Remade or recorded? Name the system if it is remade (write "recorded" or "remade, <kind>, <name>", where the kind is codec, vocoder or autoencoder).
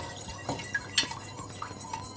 recorded